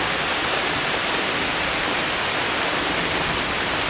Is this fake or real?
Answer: real